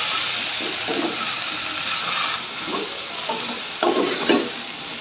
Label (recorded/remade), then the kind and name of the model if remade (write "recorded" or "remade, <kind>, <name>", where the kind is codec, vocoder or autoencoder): remade, vocoder, BigVGAN v2